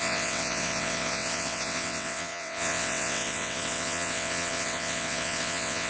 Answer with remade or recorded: remade